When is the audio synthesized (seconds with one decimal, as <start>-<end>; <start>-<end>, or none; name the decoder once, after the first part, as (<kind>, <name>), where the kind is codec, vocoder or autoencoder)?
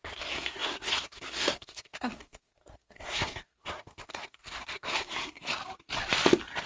0.0-5.6 (codec, SNAC)